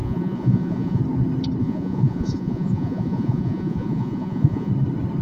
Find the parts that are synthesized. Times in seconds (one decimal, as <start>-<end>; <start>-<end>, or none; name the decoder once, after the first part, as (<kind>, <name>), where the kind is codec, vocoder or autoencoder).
0.0-1.0 (vocoder, Vocos); 1.6-4.7